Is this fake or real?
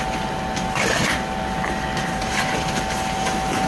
real